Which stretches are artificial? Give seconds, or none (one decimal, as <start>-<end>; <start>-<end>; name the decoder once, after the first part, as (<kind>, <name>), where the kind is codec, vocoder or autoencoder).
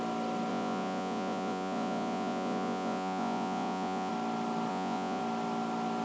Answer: 0.5-4.1 (vocoder, Vocos); 4.7-5.2